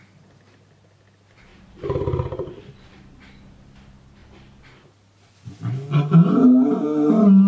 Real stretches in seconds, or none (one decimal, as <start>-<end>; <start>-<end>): 0.0-1.5; 3.1-7.5